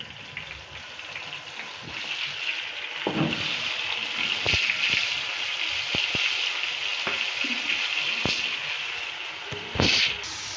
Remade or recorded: recorded